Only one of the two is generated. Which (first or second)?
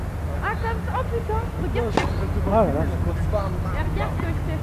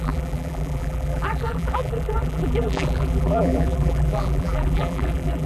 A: second